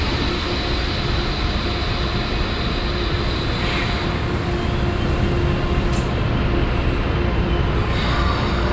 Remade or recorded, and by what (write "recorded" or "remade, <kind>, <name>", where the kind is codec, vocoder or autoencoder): recorded